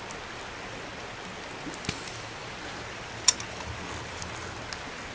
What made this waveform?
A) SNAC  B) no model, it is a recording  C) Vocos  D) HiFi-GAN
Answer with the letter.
B